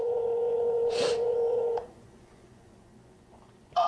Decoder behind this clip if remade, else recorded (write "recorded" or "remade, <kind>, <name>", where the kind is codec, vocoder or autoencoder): remade, vocoder, Vocos